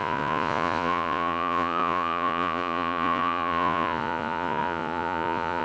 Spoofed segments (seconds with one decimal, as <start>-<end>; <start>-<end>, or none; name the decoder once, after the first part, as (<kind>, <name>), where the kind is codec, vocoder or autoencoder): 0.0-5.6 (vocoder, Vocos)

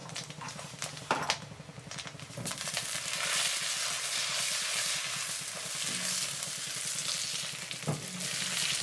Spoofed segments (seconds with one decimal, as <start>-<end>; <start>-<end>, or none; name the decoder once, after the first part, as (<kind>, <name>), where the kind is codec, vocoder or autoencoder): none

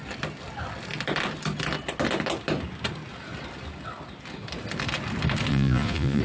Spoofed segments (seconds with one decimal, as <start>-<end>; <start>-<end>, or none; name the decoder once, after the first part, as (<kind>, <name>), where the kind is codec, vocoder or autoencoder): 5.5-6.2 (vocoder, Vocos)

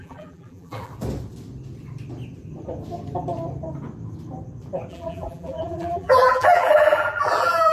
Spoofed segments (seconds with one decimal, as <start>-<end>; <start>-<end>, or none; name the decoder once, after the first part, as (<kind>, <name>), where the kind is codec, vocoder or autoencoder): 0.0-0.9 (vocoder, BigVGAN v2); 4.9-7.7

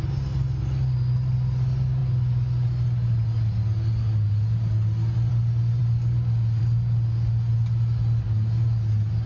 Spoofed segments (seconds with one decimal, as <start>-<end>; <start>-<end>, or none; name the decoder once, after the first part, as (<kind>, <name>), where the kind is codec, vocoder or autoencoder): none